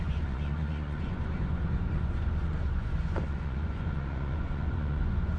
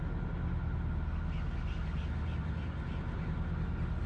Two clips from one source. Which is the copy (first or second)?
first